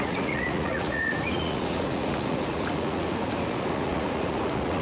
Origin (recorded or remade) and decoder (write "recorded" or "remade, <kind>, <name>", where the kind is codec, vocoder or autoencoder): remade, vocoder, Vocos